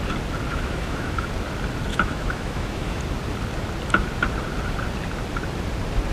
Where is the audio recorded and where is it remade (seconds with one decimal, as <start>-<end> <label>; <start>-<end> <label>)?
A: 0.0-0.5 recorded; 0.5-1.3 remade; 1.3-1.9 recorded; 1.9-3.0 remade; 3.0-6.1 recorded